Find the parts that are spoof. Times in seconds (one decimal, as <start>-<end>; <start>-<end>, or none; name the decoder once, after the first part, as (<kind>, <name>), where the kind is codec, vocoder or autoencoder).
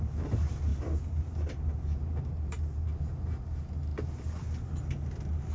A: none